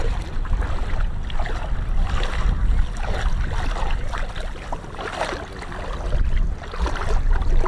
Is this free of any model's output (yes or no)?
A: yes